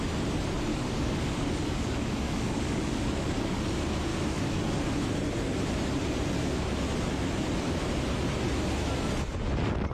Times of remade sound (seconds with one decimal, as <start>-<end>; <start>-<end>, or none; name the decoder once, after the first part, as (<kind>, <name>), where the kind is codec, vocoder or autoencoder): 0.7-3.6 (codec, DAC); 4.1-4.8